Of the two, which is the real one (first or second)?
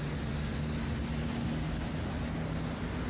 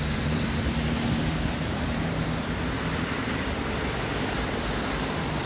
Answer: first